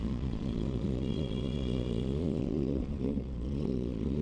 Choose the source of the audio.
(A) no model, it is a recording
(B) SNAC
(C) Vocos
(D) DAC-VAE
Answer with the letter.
C